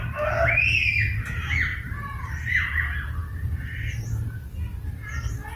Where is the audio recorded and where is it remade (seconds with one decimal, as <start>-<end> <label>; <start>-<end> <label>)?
0.0-1.7 recorded; 1.7-2.3 remade; 2.3-5.6 recorded